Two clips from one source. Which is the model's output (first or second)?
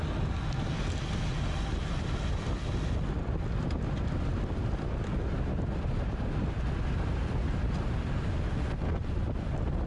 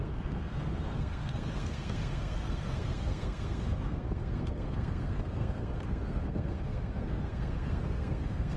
second